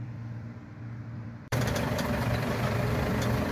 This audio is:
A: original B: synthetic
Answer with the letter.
B